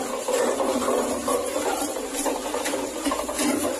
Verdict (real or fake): fake